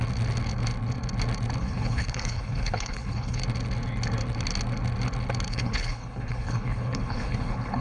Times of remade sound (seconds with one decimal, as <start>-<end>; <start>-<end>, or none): 1.6-3.4; 5.5-7.8